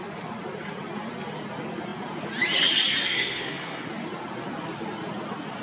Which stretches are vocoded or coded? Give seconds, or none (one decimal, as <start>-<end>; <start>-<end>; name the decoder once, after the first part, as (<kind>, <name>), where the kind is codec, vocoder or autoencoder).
3.0-3.9 (codec, SNAC)